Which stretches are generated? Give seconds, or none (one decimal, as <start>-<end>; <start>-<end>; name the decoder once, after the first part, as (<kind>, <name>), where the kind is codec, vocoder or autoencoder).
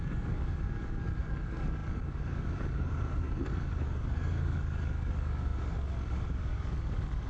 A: 0.0-7.3 (codec, DAC)